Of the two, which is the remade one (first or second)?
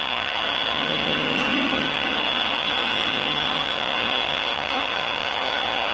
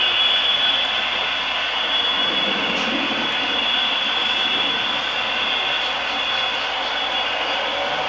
first